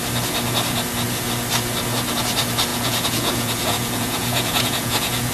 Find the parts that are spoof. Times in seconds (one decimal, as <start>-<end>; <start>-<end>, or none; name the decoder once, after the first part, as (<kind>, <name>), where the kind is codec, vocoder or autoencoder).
2.7-5.3 (vocoder, Vocos)